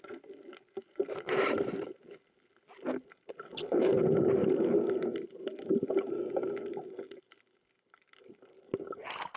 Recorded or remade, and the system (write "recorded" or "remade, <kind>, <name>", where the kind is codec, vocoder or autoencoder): recorded